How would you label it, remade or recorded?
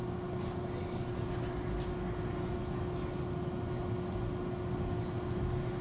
recorded